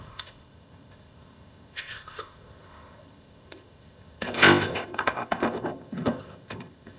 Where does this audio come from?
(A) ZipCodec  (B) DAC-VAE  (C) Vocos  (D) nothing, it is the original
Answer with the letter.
A